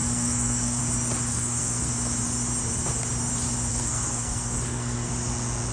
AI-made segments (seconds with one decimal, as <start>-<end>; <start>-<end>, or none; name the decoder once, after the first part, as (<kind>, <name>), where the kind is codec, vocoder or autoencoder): 0.0-0.8 (codec, SNAC); 1.3-1.9; 3.7-5.1